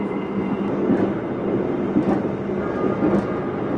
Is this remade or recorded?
recorded